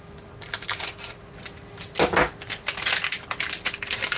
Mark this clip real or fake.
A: real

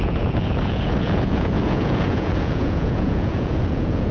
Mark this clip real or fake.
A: fake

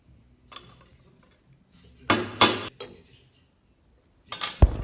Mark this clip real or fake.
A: real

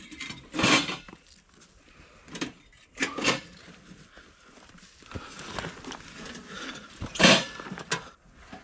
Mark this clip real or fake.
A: real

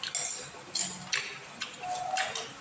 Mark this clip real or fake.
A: real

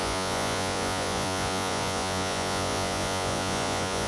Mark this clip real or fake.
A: fake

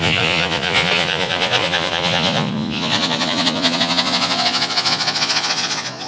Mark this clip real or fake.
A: fake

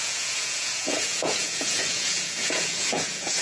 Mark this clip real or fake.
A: fake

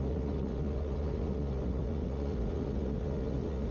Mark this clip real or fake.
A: fake